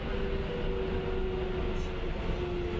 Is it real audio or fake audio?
real